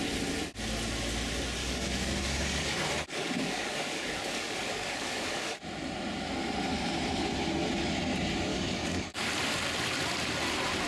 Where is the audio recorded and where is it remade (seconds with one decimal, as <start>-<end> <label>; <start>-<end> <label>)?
0.0-1.6 recorded; 1.6-5.6 remade; 5.6-8.5 recorded; 8.5-9.3 remade; 9.3-10.9 recorded